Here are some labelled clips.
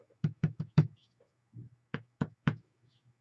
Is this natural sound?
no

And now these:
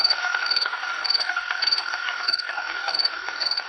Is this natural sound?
no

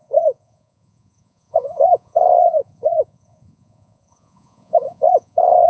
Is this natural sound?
no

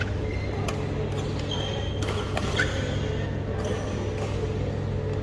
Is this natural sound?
yes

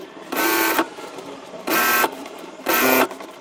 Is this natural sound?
no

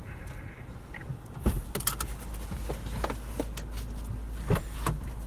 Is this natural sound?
yes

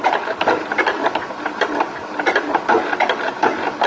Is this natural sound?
no